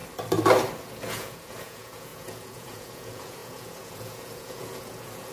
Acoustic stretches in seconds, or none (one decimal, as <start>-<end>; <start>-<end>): 0.0-0.8